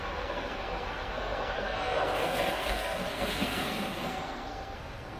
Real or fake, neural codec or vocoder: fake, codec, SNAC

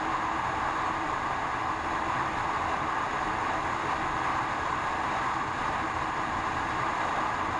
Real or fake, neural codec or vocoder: real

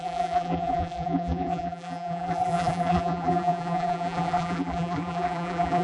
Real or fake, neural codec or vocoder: fake, vocoder, BigVGAN v2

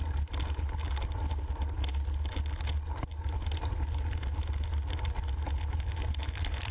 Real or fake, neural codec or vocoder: real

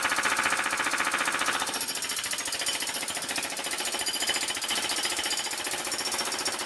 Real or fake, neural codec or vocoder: real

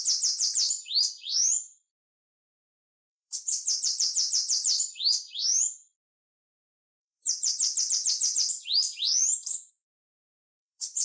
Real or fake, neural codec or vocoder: fake, vocoder, BigVGAN v2